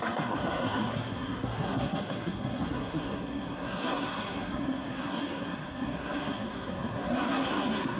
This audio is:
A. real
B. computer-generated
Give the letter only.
B